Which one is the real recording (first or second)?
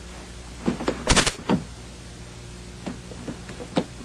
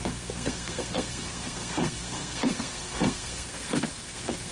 first